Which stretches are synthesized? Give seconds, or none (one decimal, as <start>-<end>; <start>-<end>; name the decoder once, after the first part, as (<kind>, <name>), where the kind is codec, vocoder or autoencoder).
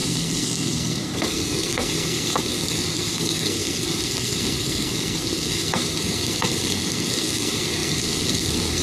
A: 0.0-8.8 (codec, SNAC)